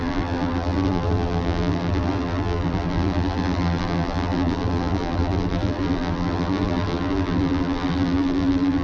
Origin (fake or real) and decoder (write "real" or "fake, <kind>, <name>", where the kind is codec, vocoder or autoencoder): fake, vocoder, BigVGAN v2